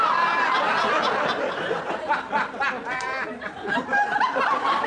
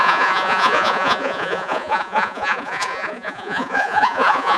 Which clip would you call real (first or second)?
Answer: first